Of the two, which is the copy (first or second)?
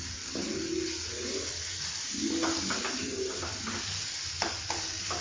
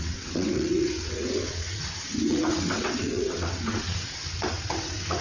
second